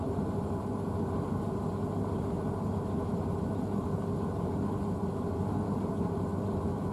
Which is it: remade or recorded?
recorded